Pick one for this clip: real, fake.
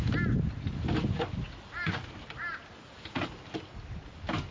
real